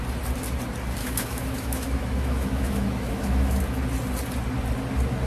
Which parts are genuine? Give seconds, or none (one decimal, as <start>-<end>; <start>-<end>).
0.0-1.0; 3.6-5.3